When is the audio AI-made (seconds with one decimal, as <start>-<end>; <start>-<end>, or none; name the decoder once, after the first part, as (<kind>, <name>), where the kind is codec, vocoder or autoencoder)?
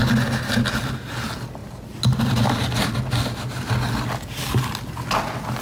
none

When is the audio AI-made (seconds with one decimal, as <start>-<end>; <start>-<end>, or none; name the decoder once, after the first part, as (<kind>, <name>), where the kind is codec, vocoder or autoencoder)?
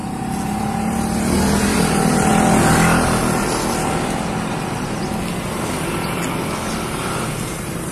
0.6-2.3 (vocoder, BigVGAN v2); 6.9-7.9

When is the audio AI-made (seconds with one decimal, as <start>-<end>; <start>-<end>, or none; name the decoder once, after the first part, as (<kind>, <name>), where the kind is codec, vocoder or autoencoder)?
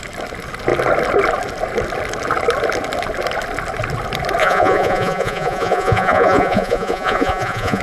4.4-7.8 (vocoder, Vocos)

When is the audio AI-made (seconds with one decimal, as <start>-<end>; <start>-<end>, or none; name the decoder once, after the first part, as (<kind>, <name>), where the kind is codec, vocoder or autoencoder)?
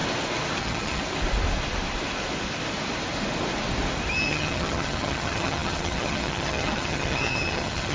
0.6-1.0 (vocoder, HiFi-GAN); 4.1-7.9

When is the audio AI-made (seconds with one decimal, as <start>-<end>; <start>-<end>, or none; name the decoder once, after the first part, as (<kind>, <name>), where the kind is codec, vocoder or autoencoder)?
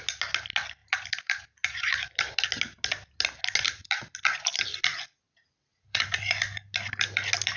5.7-6.2 (vocoder, Vocos)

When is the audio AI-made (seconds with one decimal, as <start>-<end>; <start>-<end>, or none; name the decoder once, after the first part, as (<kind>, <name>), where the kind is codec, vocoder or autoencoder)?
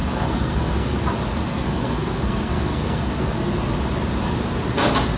0.0-1.0 (codec, SNAC); 1.5-3.5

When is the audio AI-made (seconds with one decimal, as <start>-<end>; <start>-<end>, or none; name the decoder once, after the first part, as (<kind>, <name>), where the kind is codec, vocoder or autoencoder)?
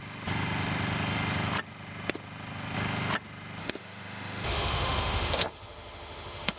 3.6-6.6 (autoencoder, DAC-VAE)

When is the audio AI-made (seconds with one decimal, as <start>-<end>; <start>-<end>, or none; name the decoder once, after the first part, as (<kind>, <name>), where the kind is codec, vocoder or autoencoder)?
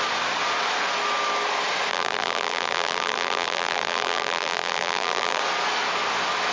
1.9-5.4 (vocoder, BigVGAN v2)